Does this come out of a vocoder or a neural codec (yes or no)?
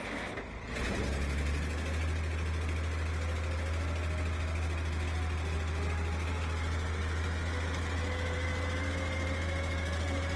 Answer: no